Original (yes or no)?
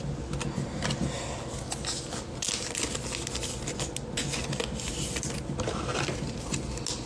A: yes